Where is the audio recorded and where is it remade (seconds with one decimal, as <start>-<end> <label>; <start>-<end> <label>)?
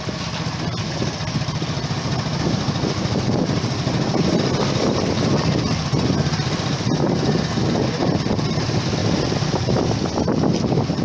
0.0-11.0 recorded